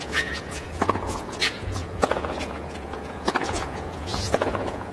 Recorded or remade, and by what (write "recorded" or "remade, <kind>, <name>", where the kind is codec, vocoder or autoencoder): remade, vocoder, Vocos